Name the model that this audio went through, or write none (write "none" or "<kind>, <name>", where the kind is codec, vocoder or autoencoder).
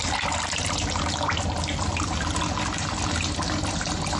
none